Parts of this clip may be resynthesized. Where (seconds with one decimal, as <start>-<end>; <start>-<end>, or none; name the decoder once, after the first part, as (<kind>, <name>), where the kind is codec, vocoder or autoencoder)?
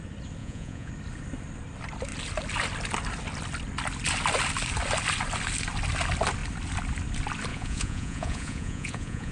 0.4-0.9 (vocoder, Vocos); 7.5-9.3